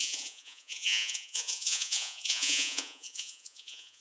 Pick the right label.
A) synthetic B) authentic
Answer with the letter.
A